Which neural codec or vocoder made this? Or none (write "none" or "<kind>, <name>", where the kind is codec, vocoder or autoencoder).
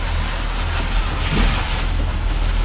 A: none